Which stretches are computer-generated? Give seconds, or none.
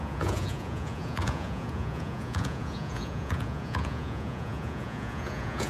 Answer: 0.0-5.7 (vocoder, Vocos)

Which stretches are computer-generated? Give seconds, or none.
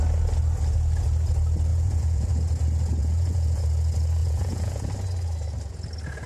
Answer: 1.7-2.3 (vocoder, Vocos); 3.0-3.6; 4.2-4.9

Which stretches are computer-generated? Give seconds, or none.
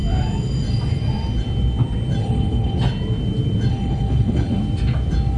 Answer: 2.2-2.8 (codec, HILCodec); 3.7-4.6